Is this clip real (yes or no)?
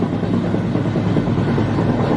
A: yes